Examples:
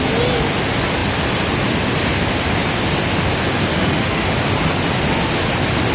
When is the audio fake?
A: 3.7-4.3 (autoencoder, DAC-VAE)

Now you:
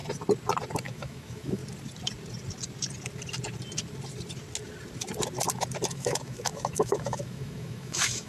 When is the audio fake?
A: 0.8-1.6 (autoencoder, DAC-VAE); 5.9-8.3

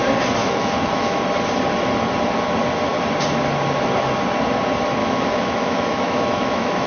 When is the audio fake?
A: 0.4-1.2 (autoencoder, DAC-VAE); 5.0-6.9